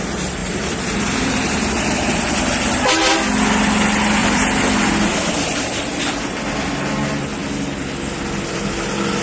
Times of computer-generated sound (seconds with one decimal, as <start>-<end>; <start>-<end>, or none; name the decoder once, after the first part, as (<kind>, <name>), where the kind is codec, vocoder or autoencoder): 0.4-1.8 (vocoder, BigVGAN v2); 4.2-6.2